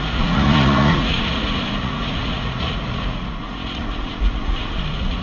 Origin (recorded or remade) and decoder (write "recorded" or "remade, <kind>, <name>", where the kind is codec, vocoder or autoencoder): remade, vocoder, Vocos